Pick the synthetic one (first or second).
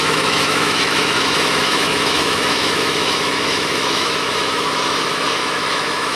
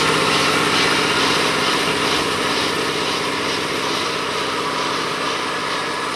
first